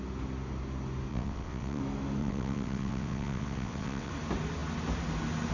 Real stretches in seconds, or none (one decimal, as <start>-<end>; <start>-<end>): 0.0-1.1; 1.8-2.2; 4.1-5.5